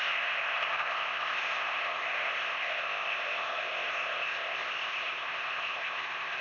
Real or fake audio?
fake